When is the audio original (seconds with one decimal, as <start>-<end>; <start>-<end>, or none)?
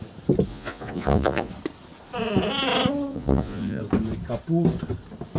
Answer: 0.0-0.5; 1.5-3.1; 3.8-5.4